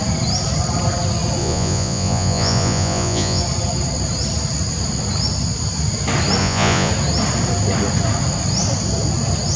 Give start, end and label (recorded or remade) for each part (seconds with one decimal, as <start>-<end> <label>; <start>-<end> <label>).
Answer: 0.0-1.4 recorded; 1.4-3.4 remade; 3.4-6.4 recorded; 6.4-6.9 remade; 6.9-9.6 recorded